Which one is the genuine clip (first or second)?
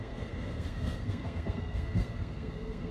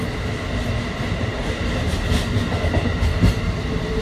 second